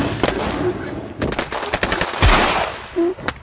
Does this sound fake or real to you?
real